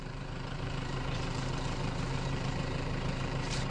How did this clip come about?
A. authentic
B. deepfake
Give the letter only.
B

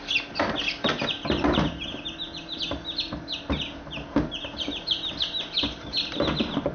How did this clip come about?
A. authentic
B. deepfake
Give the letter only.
A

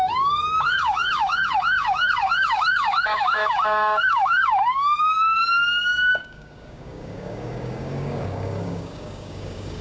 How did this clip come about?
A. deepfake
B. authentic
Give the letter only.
A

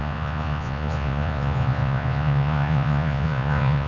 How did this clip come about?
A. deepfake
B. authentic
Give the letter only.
A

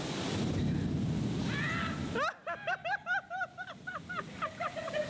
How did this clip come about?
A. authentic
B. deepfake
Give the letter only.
A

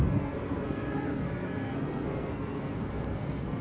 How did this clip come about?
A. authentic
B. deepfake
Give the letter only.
B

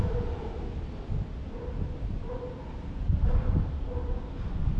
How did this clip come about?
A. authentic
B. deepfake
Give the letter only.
A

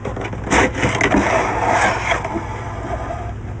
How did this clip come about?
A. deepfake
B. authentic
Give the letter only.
B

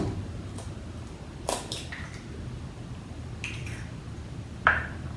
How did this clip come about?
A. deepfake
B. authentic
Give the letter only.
B